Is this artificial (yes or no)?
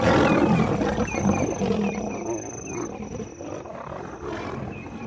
no